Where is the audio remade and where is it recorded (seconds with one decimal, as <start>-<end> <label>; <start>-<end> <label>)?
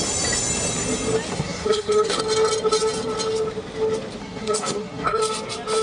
0.0-1.3 recorded; 1.3-2.2 remade; 2.2-4.2 recorded; 4.2-5.2 remade; 5.2-5.8 recorded